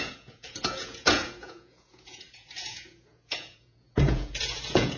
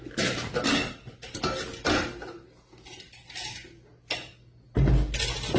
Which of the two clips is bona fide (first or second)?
second